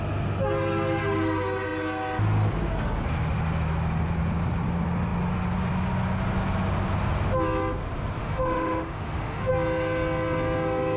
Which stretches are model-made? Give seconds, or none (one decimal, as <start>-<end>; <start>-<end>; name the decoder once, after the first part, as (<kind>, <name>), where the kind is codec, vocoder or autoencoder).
8.2-9.5 (autoencoder, DAC-VAE)